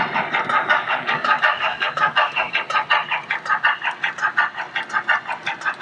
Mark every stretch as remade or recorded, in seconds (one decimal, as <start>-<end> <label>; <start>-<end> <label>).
0.0-0.6 recorded; 0.6-2.5 remade; 2.5-5.8 recorded